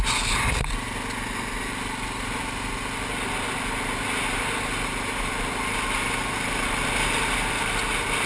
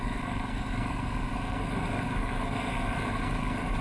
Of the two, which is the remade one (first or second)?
second